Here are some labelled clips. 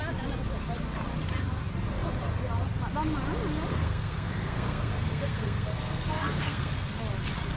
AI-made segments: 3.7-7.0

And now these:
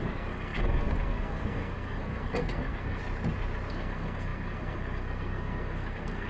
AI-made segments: 0.0-3.0; 3.7-6.3